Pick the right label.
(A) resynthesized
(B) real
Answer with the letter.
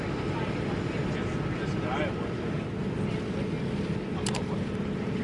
B